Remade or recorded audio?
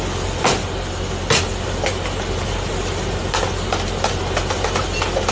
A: recorded